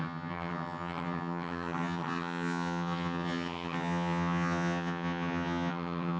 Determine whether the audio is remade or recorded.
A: remade